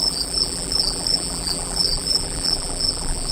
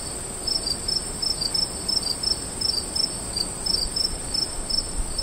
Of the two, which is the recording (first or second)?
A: second